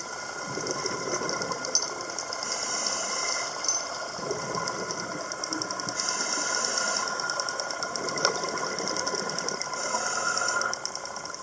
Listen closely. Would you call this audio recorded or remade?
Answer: recorded